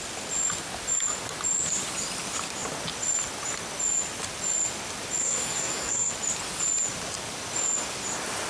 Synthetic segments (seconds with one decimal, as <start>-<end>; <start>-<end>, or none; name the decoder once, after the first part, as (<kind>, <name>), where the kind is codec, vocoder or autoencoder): 5.2-6.1 (codec, SNAC)